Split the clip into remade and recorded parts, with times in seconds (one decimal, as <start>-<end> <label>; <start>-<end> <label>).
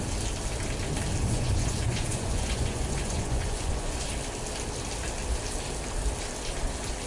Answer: 0.0-1.2 recorded; 1.2-4.1 remade; 4.1-7.1 recorded